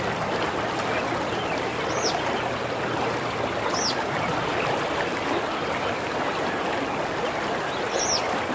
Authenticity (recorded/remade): recorded